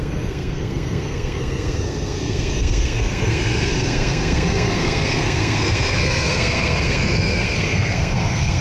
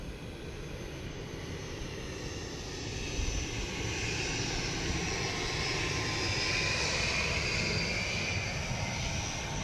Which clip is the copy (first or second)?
first